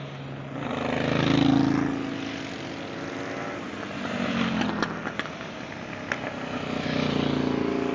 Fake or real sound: real